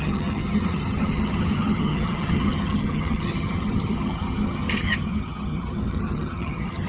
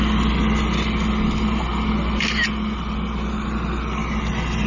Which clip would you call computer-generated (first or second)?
first